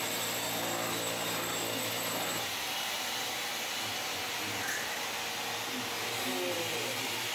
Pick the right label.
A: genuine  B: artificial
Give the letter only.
A